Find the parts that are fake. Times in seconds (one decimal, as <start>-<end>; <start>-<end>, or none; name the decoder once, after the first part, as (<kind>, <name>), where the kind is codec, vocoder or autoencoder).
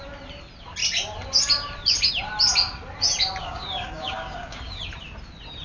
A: 3.4-4.8 (codec, DAC)